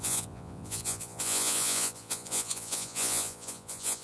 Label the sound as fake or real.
fake